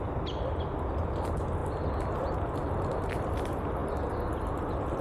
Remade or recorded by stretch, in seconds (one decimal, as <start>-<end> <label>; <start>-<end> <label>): 0.0-5.0 recorded

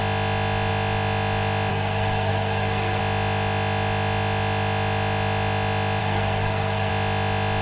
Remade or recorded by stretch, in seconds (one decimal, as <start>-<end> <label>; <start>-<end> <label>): 0.0-1.7 recorded; 1.7-3.0 remade; 3.0-6.0 recorded; 6.0-6.9 remade; 6.9-7.6 recorded

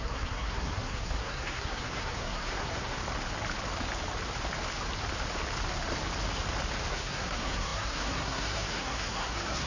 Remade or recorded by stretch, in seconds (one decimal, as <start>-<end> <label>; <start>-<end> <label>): 0.0-3.0 remade; 3.0-6.9 recorded; 6.9-9.7 remade